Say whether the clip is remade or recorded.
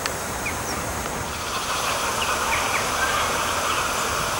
remade